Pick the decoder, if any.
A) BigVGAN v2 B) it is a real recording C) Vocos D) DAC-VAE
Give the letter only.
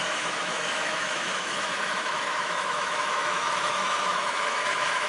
D